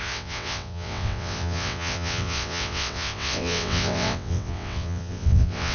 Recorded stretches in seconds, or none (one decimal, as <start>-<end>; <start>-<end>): none